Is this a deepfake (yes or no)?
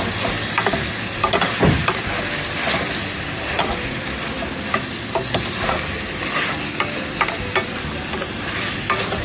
no